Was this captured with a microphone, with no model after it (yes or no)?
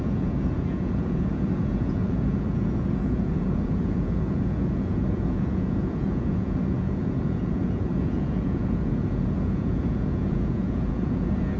no